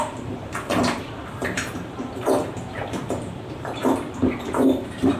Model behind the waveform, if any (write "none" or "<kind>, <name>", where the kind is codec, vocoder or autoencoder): vocoder, BigVGAN v2